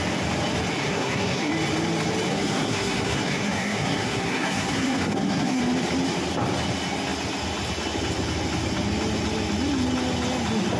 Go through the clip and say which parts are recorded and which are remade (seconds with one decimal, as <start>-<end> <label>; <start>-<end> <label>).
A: 0.0-0.8 recorded; 0.8-1.5 remade; 1.5-2.3 recorded; 2.3-5.6 remade; 5.6-10.8 recorded